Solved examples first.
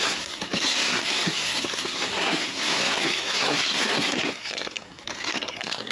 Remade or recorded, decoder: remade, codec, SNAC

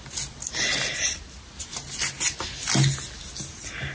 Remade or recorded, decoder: recorded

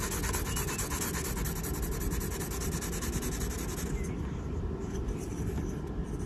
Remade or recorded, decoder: recorded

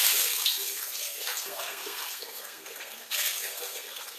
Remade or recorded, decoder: remade, codec, SNAC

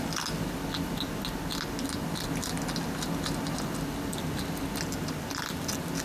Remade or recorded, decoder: recorded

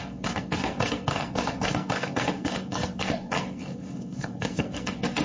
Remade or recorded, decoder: remade, codec, SNAC